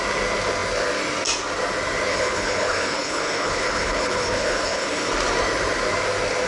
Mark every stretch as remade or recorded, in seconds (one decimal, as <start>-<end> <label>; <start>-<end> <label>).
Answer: 0.0-2.1 recorded; 2.1-5.1 remade; 5.1-6.5 recorded